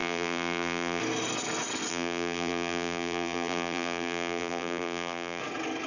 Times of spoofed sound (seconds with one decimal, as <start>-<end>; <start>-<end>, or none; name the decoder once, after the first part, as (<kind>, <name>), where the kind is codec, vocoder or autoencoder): 0.0-1.0 (vocoder, BigVGAN v2); 1.9-5.4